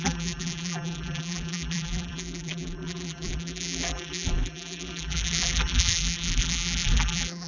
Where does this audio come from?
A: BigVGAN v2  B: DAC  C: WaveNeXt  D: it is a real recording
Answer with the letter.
A